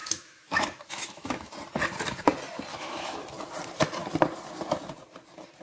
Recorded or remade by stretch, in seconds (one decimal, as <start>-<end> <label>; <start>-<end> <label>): 0.0-1.5 remade; 1.5-2.7 recorded; 2.7-3.3 remade; 3.3-5.6 recorded